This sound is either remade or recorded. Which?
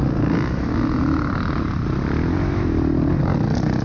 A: recorded